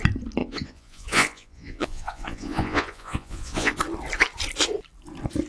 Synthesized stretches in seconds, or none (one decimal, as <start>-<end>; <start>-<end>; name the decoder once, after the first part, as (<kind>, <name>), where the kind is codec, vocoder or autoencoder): 0.4-3.7 (vocoder, Vocos)